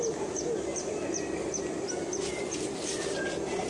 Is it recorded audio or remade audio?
recorded